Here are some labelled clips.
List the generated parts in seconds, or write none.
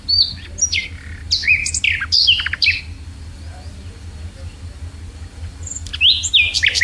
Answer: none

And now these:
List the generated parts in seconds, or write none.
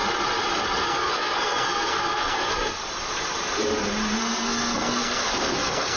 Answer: 0.8-2.8; 4.2-6.0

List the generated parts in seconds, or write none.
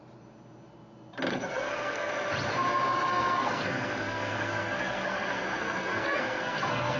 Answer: 1.3-2.1; 2.7-7.0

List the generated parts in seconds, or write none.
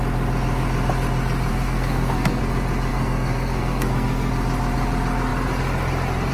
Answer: 1.5-2.4; 2.9-4.3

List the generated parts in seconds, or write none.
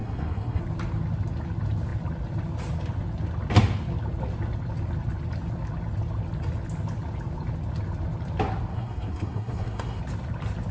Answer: 0.0-0.6; 8.7-10.0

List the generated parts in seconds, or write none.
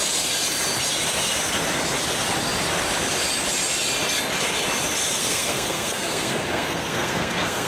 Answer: 5.2-7.7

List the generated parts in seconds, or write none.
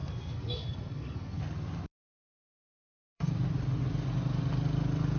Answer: 0.0-1.4; 2.1-3.3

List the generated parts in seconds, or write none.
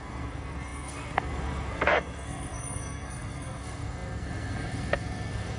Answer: 0.0-5.6